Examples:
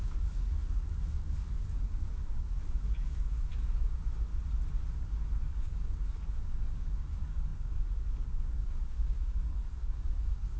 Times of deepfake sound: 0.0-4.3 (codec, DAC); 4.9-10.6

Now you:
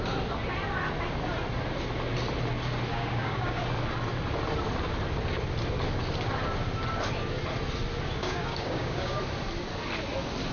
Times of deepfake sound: 2.9-3.6 (codec, DAC); 8.2-9.2

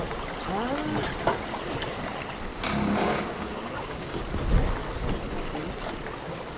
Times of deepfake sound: 2.5-4.2 (codec, DAC)